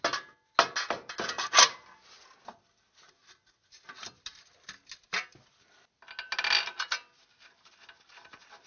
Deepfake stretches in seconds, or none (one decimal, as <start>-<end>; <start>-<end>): none